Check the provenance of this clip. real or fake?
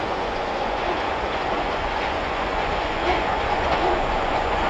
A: fake